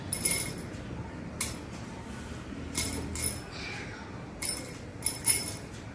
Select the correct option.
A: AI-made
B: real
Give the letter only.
B